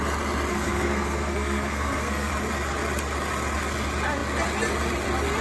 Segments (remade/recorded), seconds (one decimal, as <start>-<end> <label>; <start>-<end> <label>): 0.0-0.5 recorded; 0.5-2.3 remade; 2.3-5.4 recorded